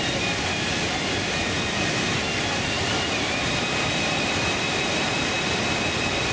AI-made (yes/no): no